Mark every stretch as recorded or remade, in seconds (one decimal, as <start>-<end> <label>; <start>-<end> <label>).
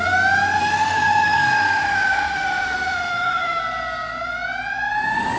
0.0-0.6 recorded; 0.6-3.6 remade; 3.6-5.4 recorded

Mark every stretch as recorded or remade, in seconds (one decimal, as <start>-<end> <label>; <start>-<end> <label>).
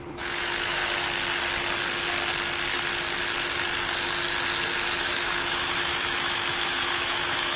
0.0-0.8 remade; 0.8-5.0 recorded; 5.0-7.6 remade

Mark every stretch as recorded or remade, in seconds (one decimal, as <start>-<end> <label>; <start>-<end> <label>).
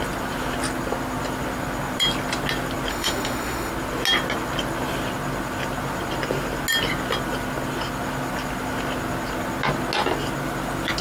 0.0-2.9 recorded; 2.9-3.7 remade; 3.7-11.0 recorded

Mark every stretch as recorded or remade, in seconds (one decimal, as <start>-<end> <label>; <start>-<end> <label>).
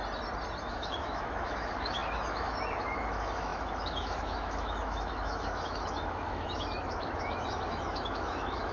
0.0-0.6 recorded; 0.6-8.7 remade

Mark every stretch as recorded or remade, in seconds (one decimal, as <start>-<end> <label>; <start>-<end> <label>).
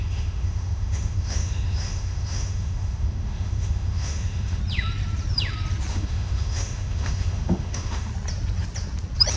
0.0-4.6 remade; 4.6-5.9 recorded; 5.9-8.1 remade; 8.1-9.4 recorded